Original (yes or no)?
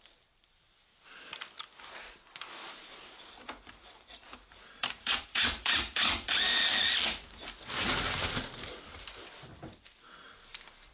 yes